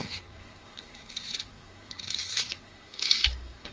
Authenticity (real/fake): fake